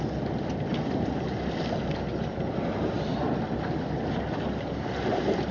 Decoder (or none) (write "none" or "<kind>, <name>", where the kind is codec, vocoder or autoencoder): none